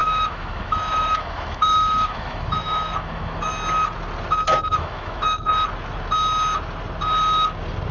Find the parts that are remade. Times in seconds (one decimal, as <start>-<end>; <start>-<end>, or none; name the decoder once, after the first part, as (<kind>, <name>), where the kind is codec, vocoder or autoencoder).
0.0-3.5 (autoencoder, DAC-VAE); 4.5-5.5

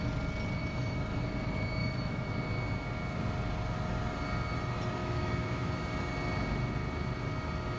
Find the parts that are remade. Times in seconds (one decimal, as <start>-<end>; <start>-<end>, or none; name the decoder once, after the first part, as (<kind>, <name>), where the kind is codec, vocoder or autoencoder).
0.6-1.2 (autoencoder, DAC-VAE); 1.8-2.3; 5.0-5.7